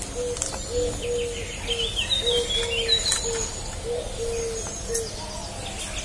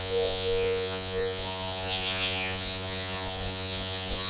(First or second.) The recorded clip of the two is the first